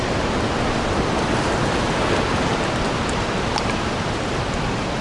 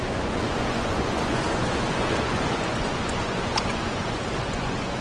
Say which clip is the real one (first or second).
first